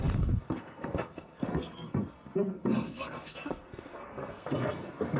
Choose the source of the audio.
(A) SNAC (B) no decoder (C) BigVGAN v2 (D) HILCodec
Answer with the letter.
A